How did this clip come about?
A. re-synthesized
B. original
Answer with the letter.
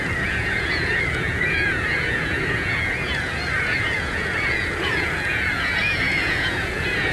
A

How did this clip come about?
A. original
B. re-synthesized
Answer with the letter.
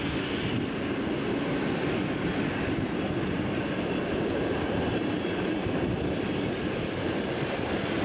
A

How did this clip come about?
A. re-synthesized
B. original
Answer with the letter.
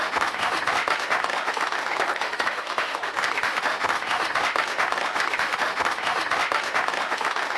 A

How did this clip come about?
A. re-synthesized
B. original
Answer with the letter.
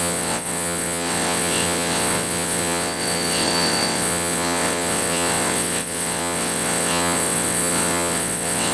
A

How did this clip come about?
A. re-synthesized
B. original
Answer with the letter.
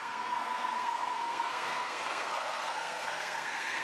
A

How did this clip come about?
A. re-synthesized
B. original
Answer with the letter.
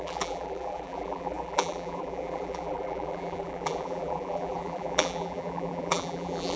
A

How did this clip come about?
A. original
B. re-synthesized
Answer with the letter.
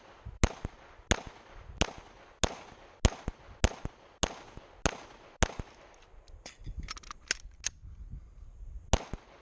A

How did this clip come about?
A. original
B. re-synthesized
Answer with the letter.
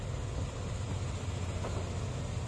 A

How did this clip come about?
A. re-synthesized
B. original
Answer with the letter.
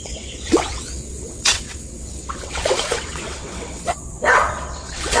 A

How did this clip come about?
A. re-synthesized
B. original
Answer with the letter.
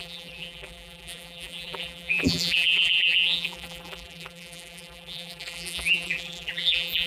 A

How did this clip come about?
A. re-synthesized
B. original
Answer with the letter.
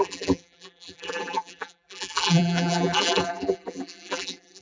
A